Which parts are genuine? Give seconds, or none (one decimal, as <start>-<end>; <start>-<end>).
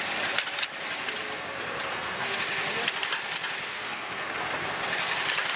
0.0-1.9; 2.4-3.7; 4.3-5.6